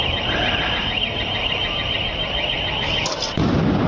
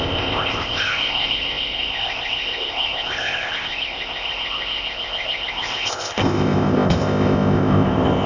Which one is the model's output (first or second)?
second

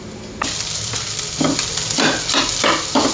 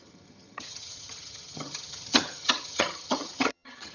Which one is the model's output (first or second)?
second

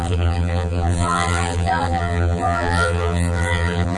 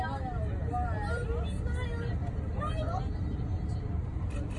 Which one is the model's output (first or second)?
first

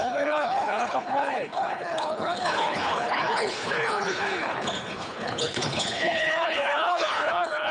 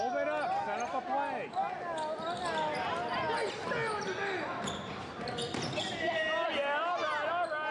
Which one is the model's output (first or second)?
first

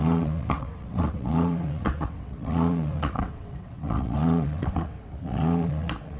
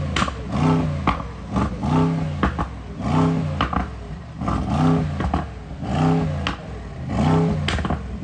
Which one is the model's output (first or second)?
first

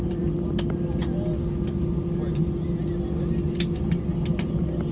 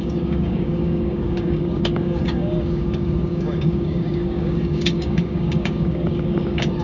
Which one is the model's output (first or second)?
second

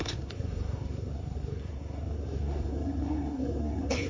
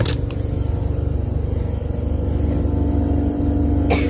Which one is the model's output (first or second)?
first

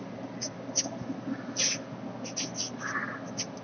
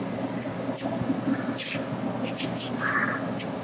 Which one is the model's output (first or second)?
second